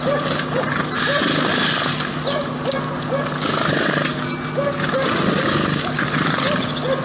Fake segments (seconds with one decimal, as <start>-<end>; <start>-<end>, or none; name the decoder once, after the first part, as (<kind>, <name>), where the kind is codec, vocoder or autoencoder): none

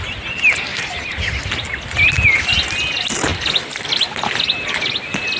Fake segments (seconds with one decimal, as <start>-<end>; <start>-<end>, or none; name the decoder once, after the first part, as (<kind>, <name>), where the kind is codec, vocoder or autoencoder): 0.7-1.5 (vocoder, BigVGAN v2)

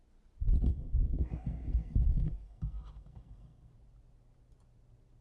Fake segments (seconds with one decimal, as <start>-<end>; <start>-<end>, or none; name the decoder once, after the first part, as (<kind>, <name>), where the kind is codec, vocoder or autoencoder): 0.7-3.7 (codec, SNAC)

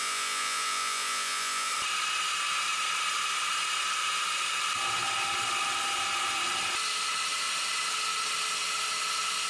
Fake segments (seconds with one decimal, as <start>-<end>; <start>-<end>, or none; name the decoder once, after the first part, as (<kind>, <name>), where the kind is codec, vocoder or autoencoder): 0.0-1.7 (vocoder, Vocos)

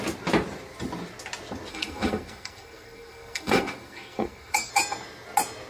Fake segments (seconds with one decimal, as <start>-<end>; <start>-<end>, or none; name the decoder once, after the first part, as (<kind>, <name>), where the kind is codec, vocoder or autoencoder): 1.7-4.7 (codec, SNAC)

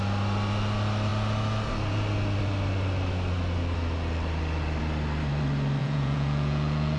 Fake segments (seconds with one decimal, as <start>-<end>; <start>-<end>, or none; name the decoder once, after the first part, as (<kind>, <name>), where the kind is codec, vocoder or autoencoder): 5.8-7.0 (vocoder, Vocos)